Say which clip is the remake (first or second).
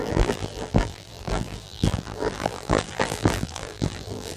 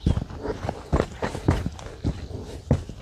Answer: first